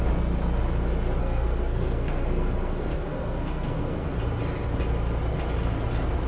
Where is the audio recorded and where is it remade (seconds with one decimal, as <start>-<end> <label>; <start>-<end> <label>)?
0.0-1.2 recorded; 1.2-4.2 remade; 4.2-6.3 recorded